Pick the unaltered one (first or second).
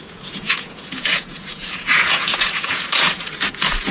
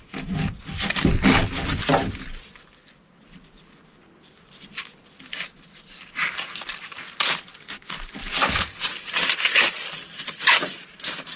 second